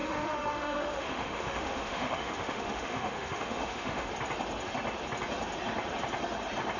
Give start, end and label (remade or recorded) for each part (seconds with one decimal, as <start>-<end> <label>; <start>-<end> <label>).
0.0-4.1 remade; 4.1-6.8 recorded